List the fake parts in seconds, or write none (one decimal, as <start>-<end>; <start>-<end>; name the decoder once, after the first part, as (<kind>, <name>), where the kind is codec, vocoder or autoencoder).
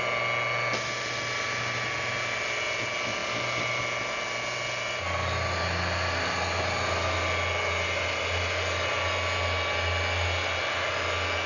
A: none